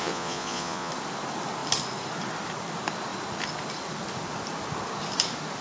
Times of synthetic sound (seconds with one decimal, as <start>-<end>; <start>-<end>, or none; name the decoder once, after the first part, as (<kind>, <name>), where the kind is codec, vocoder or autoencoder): 0.0-0.9 (vocoder, Vocos)